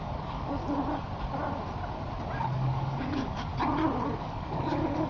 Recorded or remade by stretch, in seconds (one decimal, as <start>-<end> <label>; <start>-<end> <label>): 0.0-0.6 remade; 0.6-2.4 recorded; 2.4-3.5 remade; 3.5-4.2 recorded; 4.2-5.1 remade